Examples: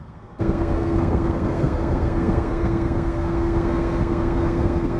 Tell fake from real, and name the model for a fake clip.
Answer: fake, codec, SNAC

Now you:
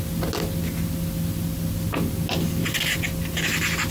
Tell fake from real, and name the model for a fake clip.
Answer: real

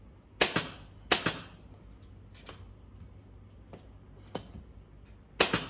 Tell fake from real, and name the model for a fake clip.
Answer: real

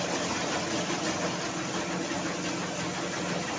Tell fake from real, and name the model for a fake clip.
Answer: real